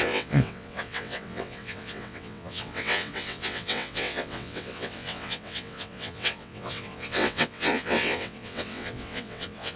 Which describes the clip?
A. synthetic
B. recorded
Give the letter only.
A